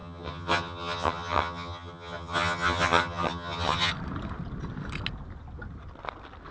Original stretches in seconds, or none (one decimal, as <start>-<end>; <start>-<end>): 3.9-6.5